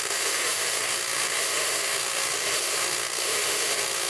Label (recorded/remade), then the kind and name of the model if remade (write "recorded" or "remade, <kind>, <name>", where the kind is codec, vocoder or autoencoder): remade, autoencoder, DAC-VAE